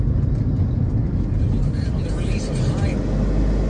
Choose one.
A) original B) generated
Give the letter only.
A